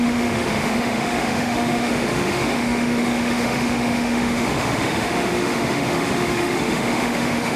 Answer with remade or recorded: remade